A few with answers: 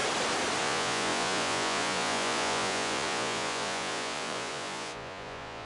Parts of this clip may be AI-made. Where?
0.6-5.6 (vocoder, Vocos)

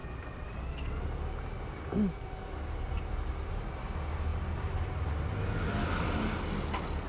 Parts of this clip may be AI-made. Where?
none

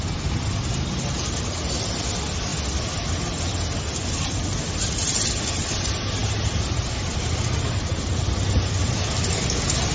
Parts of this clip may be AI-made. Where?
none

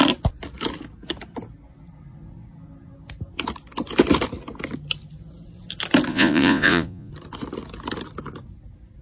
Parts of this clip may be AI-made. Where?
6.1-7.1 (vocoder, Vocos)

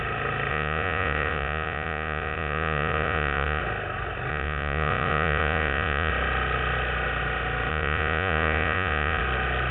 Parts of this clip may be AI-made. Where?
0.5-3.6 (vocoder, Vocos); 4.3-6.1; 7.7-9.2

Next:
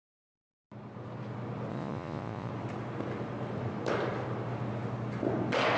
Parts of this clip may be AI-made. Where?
1.7-2.5 (vocoder, Vocos)

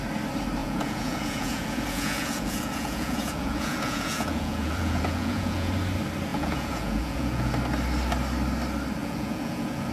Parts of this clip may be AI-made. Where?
0.6-5.7 (vocoder, Vocos); 6.3-7.5; 9.0-9.9